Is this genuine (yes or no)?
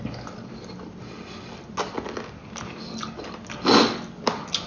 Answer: yes